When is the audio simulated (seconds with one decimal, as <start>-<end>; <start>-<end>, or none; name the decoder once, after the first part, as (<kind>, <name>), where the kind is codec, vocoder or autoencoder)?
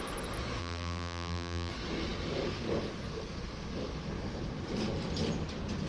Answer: 0.6-1.7 (vocoder, BigVGAN v2)